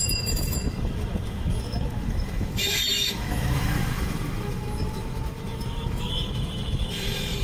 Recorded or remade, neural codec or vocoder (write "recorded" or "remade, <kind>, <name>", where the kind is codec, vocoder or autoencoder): remade, autoencoder, DAC-VAE